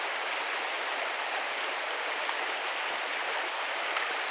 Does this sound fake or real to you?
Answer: real